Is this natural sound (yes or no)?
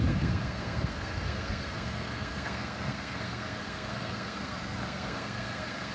no